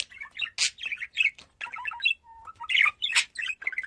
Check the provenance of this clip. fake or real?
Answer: real